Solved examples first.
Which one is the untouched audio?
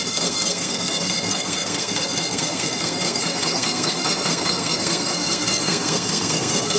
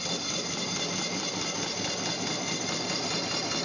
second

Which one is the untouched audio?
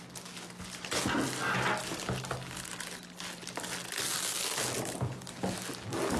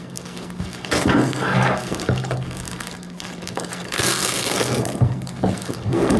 first